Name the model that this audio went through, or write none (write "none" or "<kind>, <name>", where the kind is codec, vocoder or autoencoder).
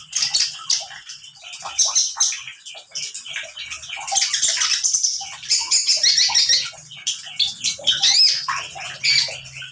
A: none